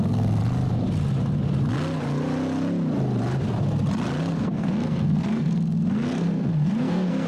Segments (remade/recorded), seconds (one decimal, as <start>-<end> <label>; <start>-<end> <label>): 0.0-0.4 remade; 0.4-4.2 recorded; 4.2-7.3 remade